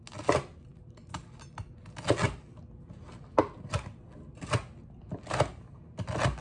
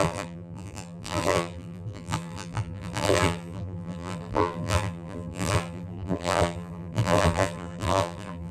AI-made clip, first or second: second